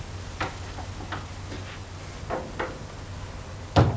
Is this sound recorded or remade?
recorded